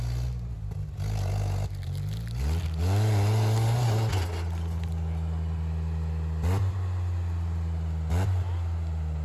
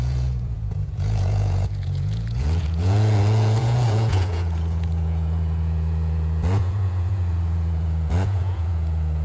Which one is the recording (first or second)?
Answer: first